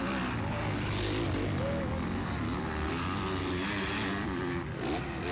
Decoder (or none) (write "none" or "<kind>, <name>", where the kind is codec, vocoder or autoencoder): none